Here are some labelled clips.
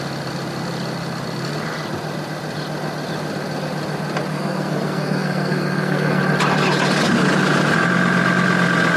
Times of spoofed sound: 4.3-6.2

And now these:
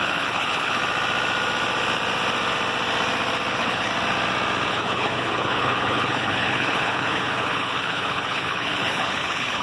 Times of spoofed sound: 0.0-0.8; 3.5-3.9; 4.7-9.6

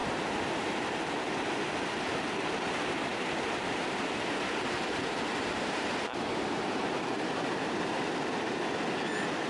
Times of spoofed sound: 3.1-7.8